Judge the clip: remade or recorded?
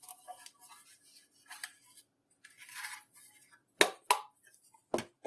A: recorded